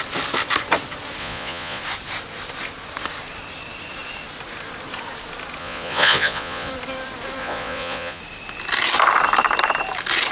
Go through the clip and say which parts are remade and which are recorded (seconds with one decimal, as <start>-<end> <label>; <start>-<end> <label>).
0.0-1.2 recorded; 1.2-1.8 remade; 1.8-5.6 recorded; 5.6-6.7 remade; 6.7-7.4 recorded; 7.4-8.2 remade; 8.2-10.3 recorded